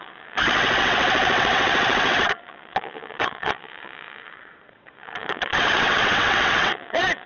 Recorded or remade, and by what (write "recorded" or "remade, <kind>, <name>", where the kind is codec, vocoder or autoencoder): remade, vocoder, WaveNeXt